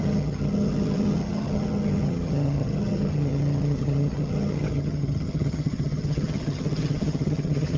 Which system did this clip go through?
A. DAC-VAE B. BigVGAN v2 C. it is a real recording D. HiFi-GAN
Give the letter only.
D